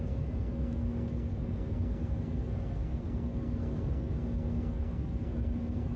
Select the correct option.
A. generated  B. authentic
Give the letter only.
A